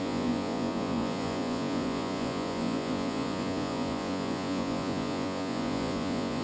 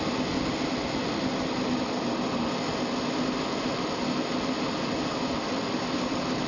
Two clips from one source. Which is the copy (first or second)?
first